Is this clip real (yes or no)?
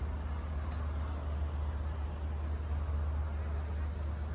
yes